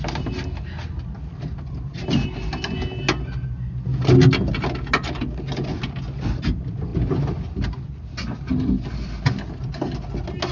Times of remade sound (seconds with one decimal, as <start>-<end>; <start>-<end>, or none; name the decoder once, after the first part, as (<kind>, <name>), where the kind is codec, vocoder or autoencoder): none